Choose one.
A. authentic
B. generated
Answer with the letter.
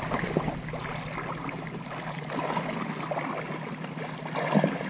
A